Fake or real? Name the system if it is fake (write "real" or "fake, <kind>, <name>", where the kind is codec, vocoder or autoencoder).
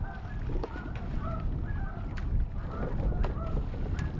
real